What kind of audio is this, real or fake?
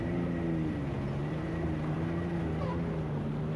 real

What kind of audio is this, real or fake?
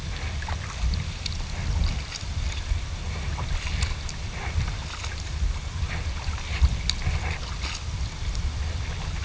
real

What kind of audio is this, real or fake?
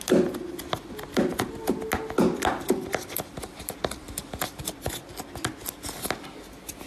real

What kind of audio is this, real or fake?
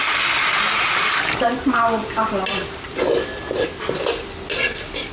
real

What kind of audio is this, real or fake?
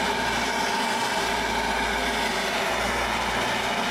real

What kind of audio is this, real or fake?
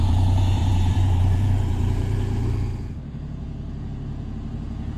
fake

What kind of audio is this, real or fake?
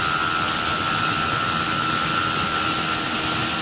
real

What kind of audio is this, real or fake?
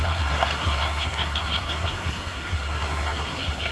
fake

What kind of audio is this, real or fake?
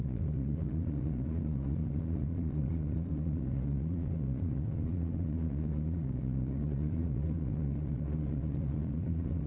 fake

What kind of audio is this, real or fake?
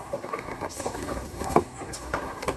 fake